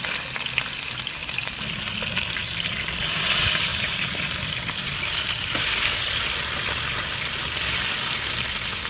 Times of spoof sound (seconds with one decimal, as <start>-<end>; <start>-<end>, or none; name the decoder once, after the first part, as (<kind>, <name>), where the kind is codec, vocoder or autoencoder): 1.2-1.8 (vocoder, BigVGAN v2); 2.4-3.1; 3.7-5.3